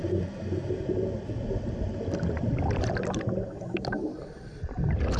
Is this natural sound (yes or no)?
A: yes